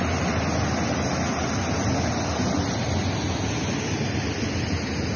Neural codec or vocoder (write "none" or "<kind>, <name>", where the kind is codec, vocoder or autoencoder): none